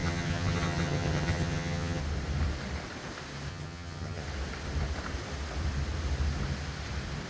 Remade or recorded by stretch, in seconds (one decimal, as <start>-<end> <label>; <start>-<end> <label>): 0.0-2.0 remade; 2.0-3.5 recorded; 3.5-4.2 remade; 4.2-7.3 recorded